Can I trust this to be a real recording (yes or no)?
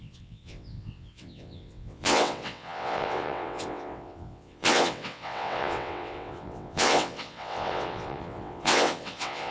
no